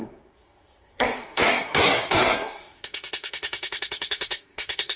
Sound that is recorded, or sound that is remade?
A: remade